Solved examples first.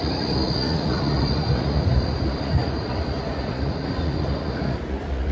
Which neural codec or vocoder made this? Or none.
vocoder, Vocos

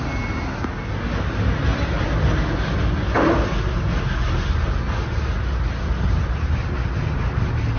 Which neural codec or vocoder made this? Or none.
none